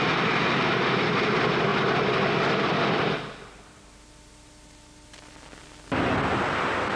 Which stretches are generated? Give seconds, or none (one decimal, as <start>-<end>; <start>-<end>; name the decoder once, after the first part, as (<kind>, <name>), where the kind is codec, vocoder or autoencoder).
none